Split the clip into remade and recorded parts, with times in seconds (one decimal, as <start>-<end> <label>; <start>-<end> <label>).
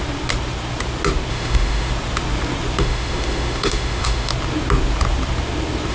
0.0-1.3 recorded; 1.3-1.9 remade; 1.9-2.8 recorded; 2.8-4.3 remade; 4.3-5.9 recorded